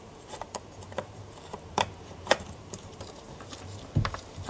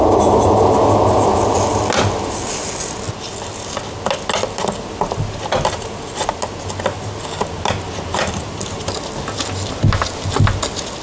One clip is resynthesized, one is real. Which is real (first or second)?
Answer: second